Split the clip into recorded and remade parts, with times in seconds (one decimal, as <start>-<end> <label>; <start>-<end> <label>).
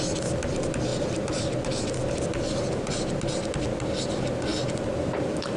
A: 0.0-5.6 recorded